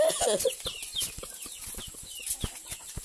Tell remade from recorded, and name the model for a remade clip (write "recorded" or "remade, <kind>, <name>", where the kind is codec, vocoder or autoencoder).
recorded